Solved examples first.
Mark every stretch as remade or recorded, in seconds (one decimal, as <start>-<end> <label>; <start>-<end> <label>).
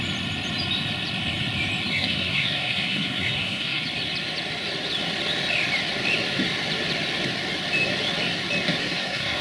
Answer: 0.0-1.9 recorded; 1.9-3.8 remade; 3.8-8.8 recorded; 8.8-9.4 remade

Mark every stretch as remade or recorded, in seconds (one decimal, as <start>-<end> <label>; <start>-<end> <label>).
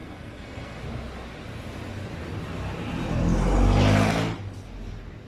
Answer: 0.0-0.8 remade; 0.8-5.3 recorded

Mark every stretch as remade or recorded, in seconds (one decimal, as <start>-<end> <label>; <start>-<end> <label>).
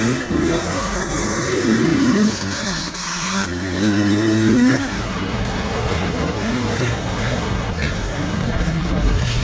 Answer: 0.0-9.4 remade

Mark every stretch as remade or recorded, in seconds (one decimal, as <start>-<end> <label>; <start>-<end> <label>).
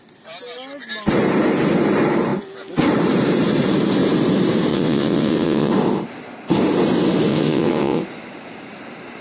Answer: 0.0-4.7 recorded; 4.7-5.7 remade; 5.7-7.3 recorded; 7.3-8.0 remade; 8.0-9.2 recorded